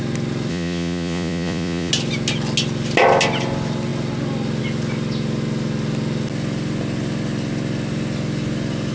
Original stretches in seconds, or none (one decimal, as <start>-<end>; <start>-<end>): 0.0-0.5; 1.9-8.9

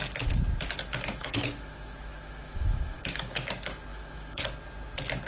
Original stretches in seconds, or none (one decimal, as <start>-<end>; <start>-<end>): 0.0-1.1; 3.5-3.9; 4.4-5.3

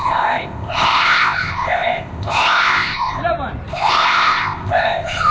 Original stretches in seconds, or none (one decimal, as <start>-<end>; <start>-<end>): 3.2-3.7

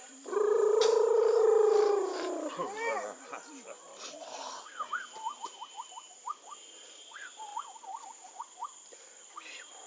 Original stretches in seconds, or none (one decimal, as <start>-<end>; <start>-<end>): 7.5-8.3

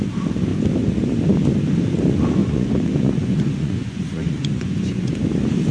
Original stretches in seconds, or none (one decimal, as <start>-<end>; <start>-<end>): 0.0-2.4; 5.1-5.7

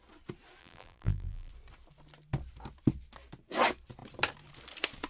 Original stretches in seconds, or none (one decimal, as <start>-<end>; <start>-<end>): 0.0-0.6; 1.5-5.1

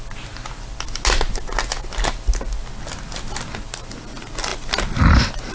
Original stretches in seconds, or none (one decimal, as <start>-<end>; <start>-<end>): 0.0-5.5